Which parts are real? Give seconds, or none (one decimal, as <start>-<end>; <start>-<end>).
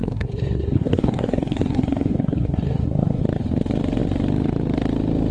3.2-5.3